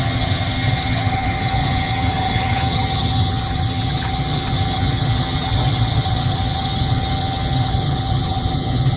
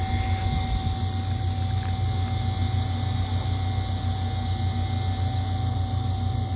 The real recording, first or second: second